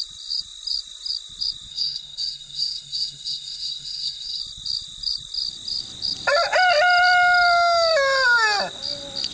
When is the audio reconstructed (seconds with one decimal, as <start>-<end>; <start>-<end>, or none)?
1.7-4.4